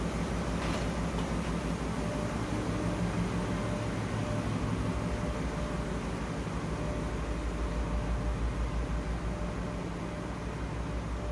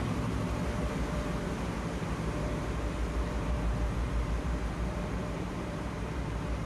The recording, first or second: first